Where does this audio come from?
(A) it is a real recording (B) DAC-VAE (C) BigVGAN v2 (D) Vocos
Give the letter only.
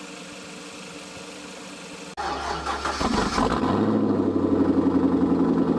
A